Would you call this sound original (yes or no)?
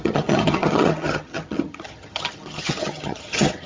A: no